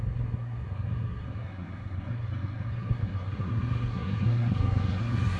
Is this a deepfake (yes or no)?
yes